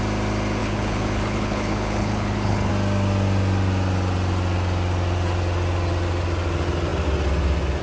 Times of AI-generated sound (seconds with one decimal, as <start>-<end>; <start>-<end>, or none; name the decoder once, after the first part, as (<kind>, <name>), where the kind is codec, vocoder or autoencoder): 0.6-2.7 (codec, HILCodec)